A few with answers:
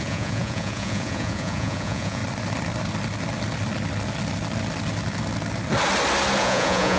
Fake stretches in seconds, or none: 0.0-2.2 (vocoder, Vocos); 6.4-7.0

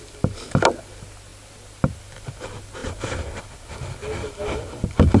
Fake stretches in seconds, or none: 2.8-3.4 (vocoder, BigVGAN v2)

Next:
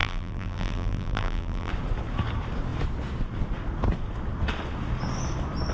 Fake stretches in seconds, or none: 0.0-1.7 (vocoder, BigVGAN v2)

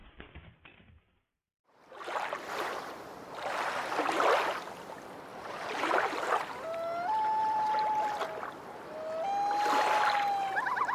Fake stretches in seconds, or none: 0.0-3.9 (vocoder, BigVGAN v2); 5.3-8.1